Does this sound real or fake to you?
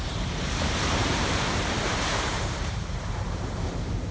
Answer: fake